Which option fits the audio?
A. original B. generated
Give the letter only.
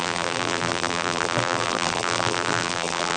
B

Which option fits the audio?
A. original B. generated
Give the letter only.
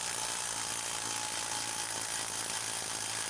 A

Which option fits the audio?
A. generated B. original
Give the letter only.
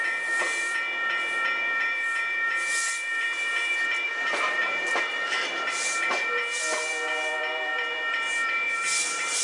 A